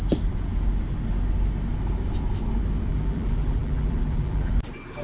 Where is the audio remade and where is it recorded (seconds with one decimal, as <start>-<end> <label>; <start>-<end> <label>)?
0.0-2.9 recorded; 2.9-4.5 remade; 4.5-5.0 recorded